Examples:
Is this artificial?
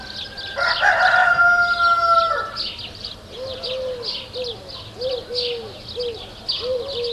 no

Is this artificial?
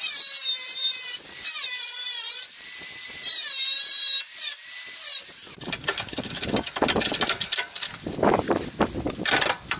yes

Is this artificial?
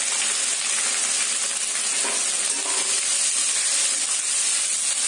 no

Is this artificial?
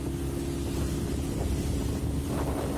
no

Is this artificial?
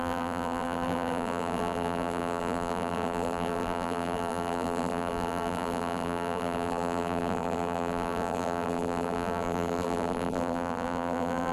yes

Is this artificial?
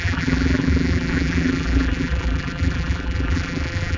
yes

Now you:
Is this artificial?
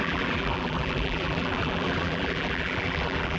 yes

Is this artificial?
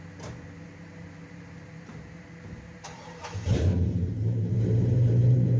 yes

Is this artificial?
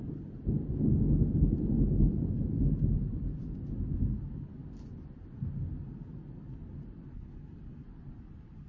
no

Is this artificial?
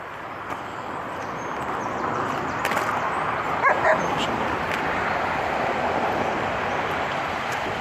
no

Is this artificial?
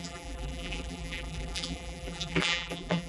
yes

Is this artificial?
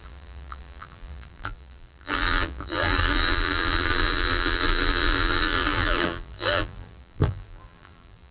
yes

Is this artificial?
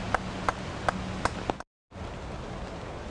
no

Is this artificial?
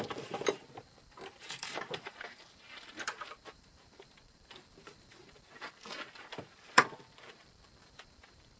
yes